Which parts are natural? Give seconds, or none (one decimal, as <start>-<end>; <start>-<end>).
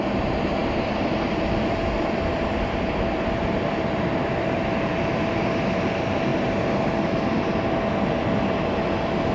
0.0-0.6; 5.1-9.3